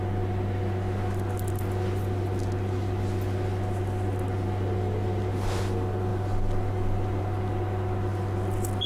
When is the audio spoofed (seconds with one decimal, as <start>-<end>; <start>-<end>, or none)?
none